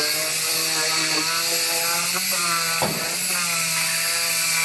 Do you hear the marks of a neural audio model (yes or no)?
no